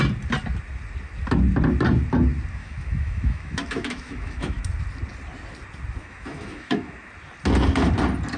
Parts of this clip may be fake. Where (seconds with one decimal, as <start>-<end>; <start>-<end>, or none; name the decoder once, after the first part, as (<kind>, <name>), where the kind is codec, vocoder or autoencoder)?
2.6-4.6 (autoencoder, DAC-VAE); 6.0-7.1

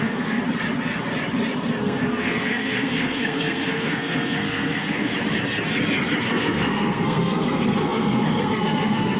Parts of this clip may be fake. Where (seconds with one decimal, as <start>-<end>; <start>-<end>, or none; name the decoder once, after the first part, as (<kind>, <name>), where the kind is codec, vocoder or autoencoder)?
0.0-0.4 (codec, SNAC); 1.8-5.1; 6.2-9.2

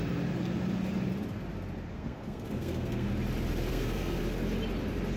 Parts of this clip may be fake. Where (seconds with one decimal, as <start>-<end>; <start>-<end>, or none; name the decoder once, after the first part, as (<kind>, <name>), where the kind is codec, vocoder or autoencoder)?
1.9-3.1 (codec, SNAC); 3.7-4.2